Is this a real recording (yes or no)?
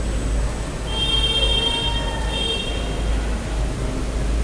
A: yes